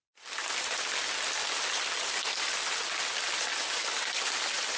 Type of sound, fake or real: real